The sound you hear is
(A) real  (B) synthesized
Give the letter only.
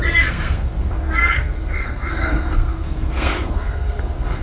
B